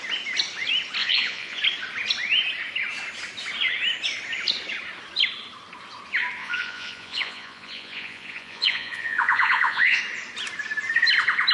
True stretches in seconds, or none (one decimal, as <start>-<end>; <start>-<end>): 0.0-1.0; 1.6-6.4; 10.0-11.5